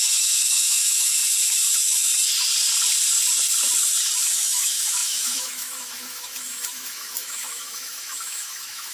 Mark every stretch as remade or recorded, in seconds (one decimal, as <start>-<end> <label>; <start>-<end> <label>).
0.0-1.2 remade; 1.2-1.7 recorded; 1.7-2.1 remade; 2.1-4.2 recorded; 4.2-8.9 remade